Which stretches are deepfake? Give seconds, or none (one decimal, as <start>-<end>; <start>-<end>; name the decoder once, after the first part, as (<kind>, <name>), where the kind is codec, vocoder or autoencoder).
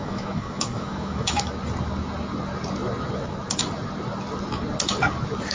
0.0-1.5 (autoencoder, DAC-VAE)